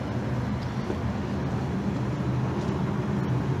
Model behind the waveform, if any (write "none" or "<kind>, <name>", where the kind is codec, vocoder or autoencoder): none